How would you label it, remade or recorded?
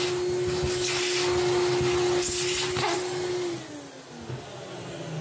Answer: recorded